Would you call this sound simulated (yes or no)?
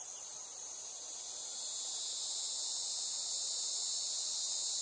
yes